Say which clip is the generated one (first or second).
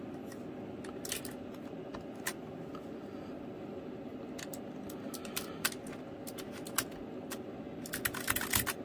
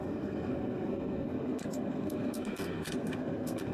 second